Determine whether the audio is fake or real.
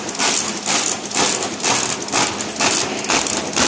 real